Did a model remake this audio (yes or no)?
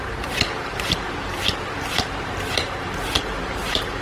yes